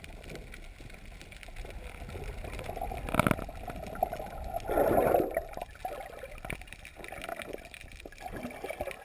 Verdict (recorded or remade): recorded